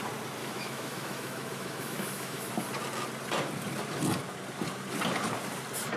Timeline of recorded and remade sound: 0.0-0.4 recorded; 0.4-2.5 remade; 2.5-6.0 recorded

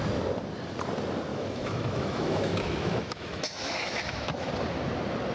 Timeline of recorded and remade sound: 0.0-1.3 recorded; 1.3-4.5 remade; 4.5-5.3 recorded

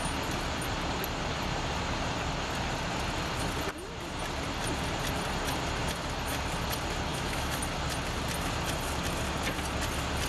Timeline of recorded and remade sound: 0.0-7.1 recorded; 7.1-7.6 remade; 7.6-10.3 recorded

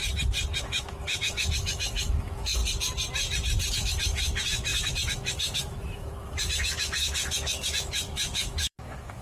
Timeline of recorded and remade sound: 0.0-0.6 recorded; 0.6-2.6 remade; 2.6-3.7 recorded; 3.7-9.2 remade

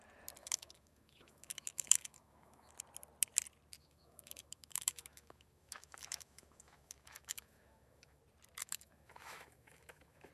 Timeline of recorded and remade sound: 0.0-0.4 recorded; 0.4-2.7 remade; 2.7-3.8 recorded; 3.8-8.2 remade; 8.2-8.6 recorded; 8.6-10.3 remade

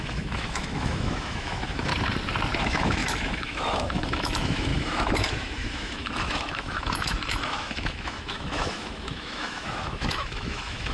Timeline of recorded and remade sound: 0.0-1.9 remade; 1.9-2.6 recorded; 2.6-10.9 remade

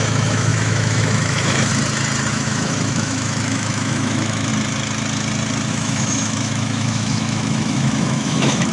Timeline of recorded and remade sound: 0.0-1.7 remade; 1.7-2.3 recorded; 2.3-4.5 remade; 4.5-5.7 recorded; 5.7-8.7 remade